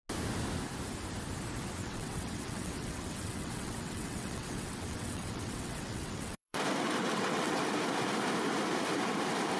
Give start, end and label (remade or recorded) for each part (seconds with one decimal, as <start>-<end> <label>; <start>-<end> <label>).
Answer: 0.0-1.8 recorded; 1.8-6.6 remade; 6.6-7.0 recorded; 7.0-7.6 remade; 7.6-9.6 recorded